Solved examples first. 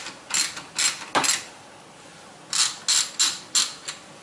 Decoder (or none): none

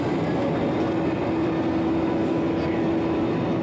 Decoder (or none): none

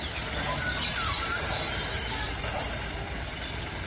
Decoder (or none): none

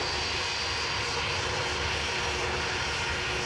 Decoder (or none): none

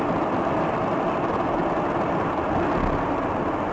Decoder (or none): none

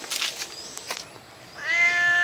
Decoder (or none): none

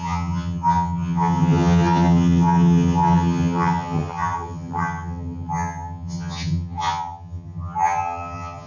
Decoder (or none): vocoder, HiFi-GAN